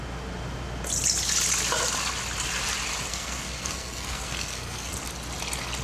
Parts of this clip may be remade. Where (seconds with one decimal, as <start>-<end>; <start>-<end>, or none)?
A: 3.1-4.9